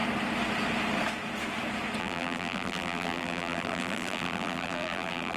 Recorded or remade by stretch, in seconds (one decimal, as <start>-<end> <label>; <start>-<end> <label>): 0.0-2.0 recorded; 2.0-5.4 remade